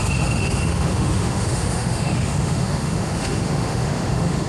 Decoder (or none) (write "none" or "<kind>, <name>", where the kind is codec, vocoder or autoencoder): autoencoder, DAC-VAE